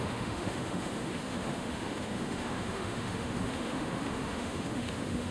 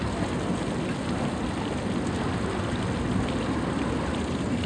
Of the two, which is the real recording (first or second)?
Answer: second